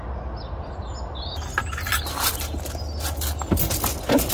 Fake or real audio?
real